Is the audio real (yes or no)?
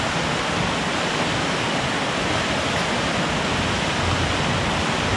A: yes